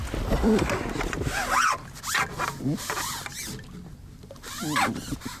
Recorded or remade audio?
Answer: recorded